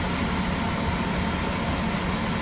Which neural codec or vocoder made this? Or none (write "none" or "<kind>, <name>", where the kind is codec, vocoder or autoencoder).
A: none